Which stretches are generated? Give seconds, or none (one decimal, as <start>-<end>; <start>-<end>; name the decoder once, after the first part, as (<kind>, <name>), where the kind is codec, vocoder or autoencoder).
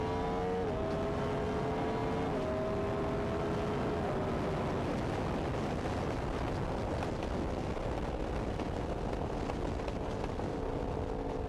none